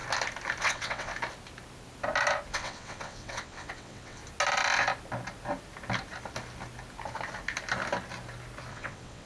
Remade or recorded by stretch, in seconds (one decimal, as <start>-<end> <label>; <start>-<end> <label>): 0.0-0.6 recorded; 0.6-1.1 remade; 1.1-2.5 recorded; 2.5-4.2 remade; 4.2-8.7 recorded; 8.7-9.3 remade